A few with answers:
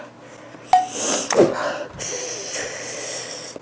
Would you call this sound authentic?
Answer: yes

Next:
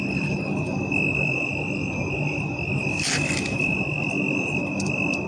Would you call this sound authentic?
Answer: yes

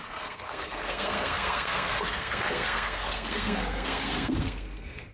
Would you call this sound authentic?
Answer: no